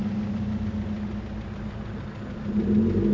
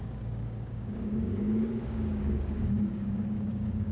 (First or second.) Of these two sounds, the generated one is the second